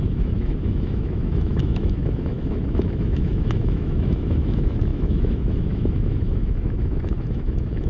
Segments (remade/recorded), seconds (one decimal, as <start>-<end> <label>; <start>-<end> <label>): 0.0-7.9 remade